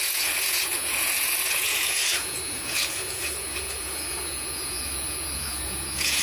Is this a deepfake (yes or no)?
yes